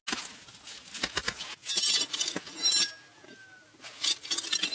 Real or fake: real